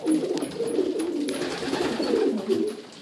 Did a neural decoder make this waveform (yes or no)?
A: no